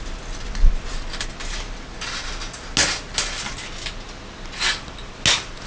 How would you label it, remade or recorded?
recorded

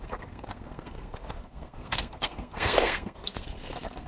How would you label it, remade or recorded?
remade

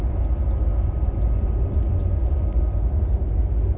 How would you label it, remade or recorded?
recorded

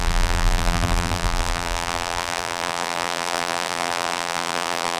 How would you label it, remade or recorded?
remade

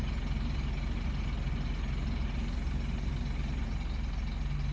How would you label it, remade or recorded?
recorded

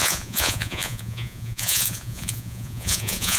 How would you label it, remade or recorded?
remade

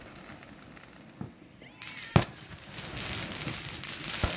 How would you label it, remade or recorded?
recorded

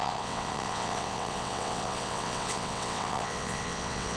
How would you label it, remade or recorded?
remade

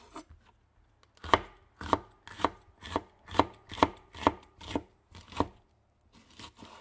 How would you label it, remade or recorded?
recorded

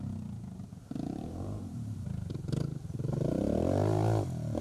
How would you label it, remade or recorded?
recorded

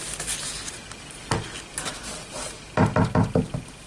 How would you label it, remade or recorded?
recorded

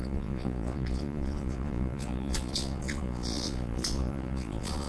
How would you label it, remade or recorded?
remade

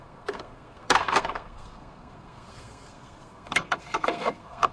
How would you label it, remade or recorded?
remade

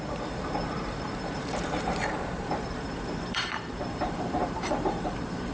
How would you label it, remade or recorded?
remade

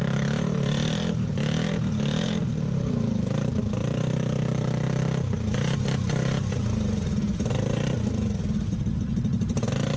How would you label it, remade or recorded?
remade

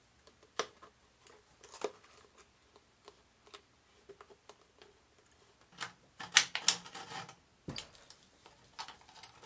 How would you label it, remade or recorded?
recorded